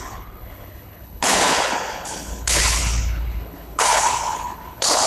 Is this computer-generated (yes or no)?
yes